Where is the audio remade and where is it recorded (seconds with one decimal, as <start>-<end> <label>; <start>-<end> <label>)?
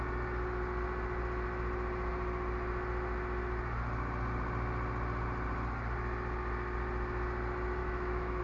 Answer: 0.0-7.8 recorded; 7.8-8.4 remade